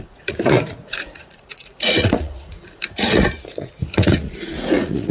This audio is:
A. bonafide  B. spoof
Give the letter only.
B